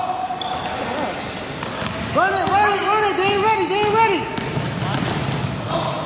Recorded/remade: recorded